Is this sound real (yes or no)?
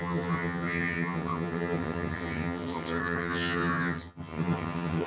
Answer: no